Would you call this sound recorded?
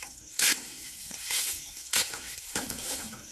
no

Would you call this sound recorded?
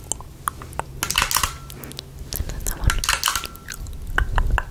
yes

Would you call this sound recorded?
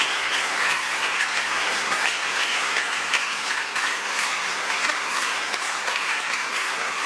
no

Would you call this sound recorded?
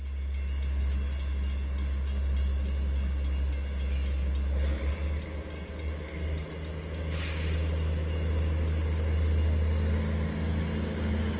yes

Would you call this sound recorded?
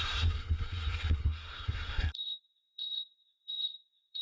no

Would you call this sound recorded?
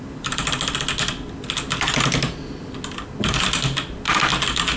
yes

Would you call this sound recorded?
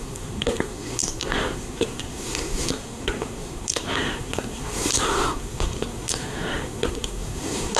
no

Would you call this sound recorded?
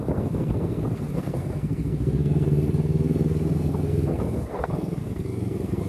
no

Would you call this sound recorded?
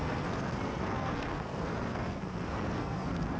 no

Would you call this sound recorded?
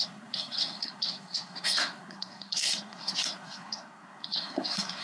no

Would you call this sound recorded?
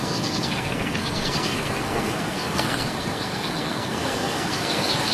no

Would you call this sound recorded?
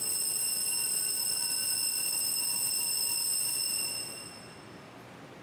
yes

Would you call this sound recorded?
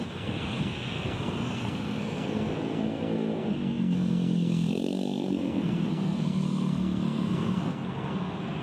no